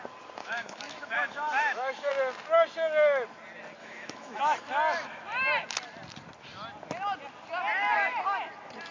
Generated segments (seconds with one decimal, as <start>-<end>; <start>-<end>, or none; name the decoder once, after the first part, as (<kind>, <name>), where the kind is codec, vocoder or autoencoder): 0.4-2.1 (autoencoder, DAC-VAE); 3.8-4.4